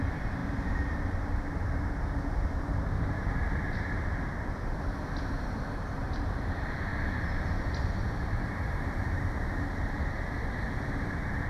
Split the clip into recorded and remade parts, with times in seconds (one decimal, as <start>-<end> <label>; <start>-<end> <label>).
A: 0.0-6.9 remade; 6.9-8.2 recorded; 8.2-11.5 remade